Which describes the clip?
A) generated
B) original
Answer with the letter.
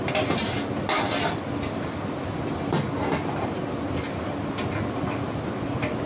B